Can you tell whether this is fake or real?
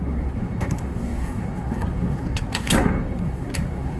fake